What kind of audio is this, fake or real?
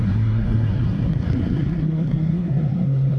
fake